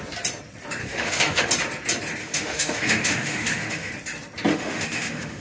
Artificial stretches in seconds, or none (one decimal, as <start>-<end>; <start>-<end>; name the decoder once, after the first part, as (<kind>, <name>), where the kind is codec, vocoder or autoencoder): 0.8-1.5 (autoencoder, DAC-VAE); 2.2-3.9; 4.5-5.4